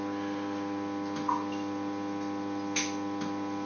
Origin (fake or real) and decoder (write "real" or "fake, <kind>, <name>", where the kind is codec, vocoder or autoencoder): real